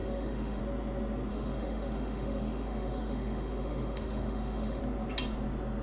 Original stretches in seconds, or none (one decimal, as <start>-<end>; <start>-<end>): 0.6-1.3; 4.8-5.8